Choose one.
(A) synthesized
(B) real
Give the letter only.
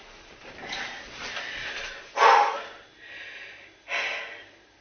B